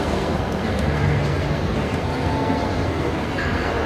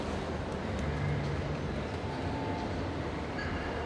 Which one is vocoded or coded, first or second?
first